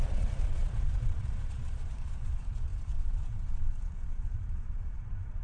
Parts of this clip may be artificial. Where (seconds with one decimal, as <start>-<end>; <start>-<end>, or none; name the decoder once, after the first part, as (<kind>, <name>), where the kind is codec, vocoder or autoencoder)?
0.0-5.4 (vocoder, Vocos)